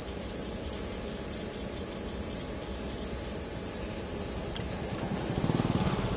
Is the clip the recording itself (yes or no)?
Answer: yes